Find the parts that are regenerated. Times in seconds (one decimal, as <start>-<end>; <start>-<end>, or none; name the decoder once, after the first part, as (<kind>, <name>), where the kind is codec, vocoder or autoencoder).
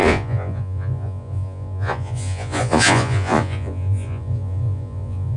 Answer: 0.0-5.4 (vocoder, Vocos)